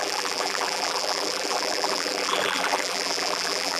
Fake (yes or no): yes